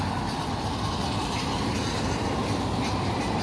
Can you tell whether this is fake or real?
real